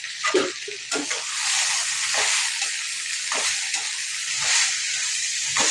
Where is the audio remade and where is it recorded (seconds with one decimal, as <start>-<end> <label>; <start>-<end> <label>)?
0.0-5.7 recorded